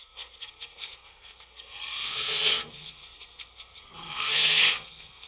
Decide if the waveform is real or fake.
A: fake